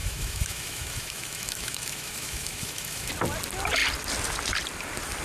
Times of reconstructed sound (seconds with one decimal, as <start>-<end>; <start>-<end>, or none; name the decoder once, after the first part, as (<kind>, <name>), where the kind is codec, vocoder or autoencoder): 0.0-3.1 (autoencoder, DAC-VAE)